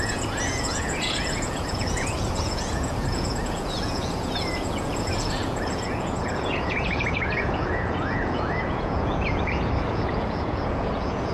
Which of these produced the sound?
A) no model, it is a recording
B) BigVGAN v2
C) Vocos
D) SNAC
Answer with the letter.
C